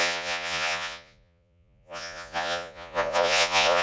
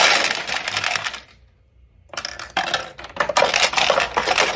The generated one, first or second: first